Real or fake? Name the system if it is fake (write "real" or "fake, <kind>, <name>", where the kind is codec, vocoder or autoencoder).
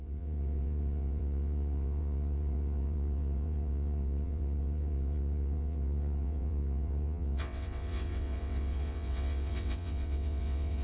fake, vocoder, WaveNeXt